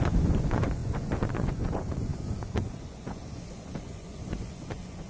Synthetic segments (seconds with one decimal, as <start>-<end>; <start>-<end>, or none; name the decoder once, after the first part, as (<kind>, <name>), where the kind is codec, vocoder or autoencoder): 0.0-5.1 (vocoder, Vocos)